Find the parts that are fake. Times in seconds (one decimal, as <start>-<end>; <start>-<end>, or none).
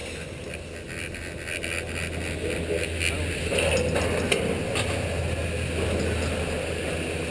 none